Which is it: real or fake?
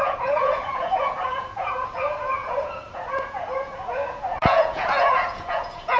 fake